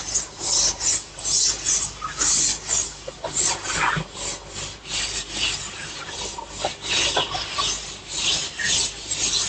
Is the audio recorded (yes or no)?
yes